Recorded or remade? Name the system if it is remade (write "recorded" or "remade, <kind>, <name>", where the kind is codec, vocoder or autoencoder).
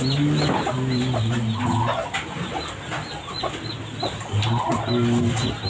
recorded